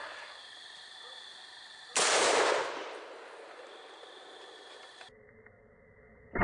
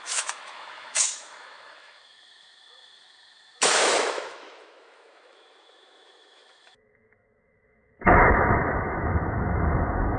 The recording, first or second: first